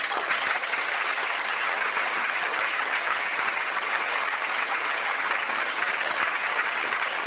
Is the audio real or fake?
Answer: fake